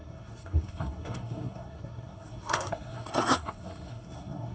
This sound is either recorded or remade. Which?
remade